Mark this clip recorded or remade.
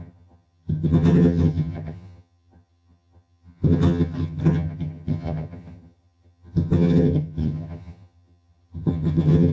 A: remade